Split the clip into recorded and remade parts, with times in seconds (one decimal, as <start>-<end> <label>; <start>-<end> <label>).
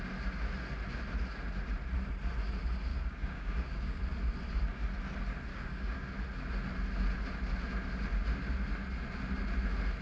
0.0-2.9 recorded; 2.9-4.0 remade; 4.0-5.5 recorded; 5.5-6.1 remade; 6.1-10.0 recorded